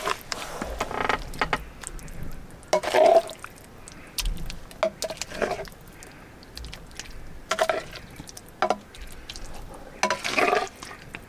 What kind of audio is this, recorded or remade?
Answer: recorded